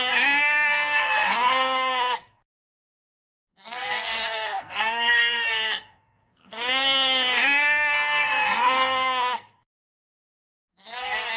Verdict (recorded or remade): remade